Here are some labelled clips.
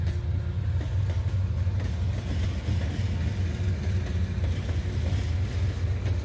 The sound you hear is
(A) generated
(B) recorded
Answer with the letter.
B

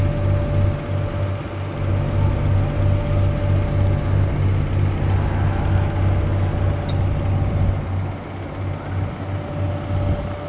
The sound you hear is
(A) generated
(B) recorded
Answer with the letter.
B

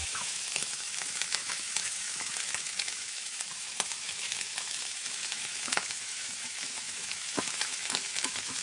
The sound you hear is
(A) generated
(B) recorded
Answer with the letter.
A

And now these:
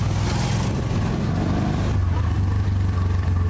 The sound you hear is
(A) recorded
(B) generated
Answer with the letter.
A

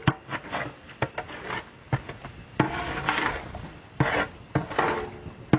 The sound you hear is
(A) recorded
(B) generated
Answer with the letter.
A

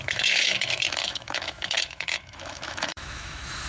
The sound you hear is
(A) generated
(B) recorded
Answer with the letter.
A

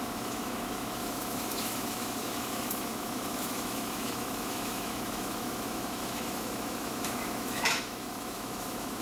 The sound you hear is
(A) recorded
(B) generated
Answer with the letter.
B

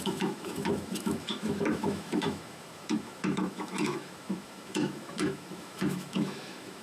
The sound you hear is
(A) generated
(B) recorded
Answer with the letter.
A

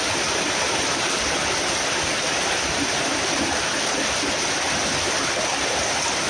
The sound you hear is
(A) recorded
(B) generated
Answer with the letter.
A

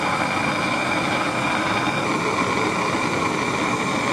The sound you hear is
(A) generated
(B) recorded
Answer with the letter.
B